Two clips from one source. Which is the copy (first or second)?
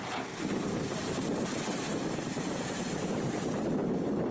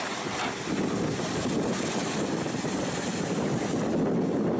first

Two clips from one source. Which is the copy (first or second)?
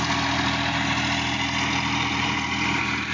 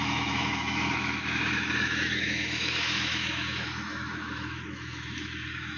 second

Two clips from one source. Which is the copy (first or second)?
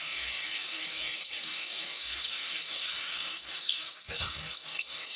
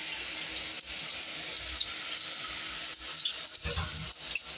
first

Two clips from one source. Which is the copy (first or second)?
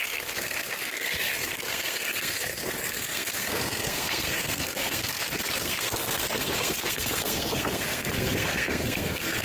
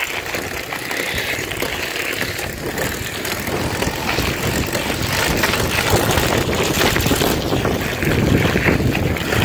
first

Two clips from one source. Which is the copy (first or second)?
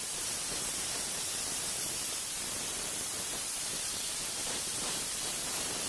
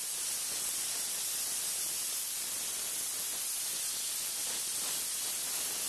first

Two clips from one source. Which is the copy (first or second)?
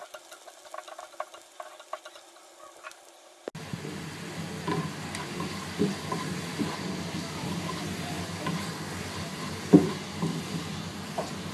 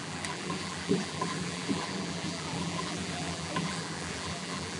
second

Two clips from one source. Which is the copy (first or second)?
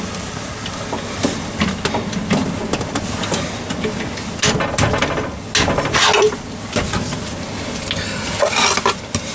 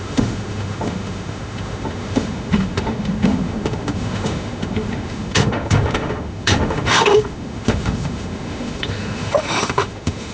second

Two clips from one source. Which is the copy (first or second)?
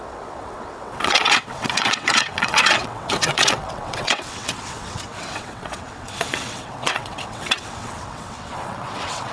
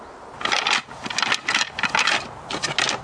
first